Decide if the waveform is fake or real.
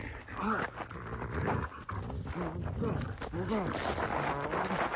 real